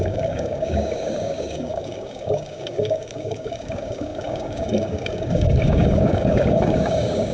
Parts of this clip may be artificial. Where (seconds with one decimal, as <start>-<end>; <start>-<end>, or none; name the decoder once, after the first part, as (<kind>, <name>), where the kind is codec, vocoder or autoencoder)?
0.0-7.3 (codec, DAC)